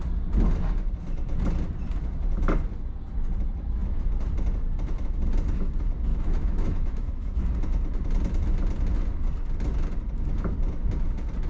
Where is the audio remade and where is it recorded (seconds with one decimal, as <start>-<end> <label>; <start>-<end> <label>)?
0.0-6.1 recorded; 6.1-7.4 remade; 7.4-11.5 recorded